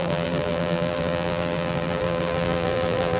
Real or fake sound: fake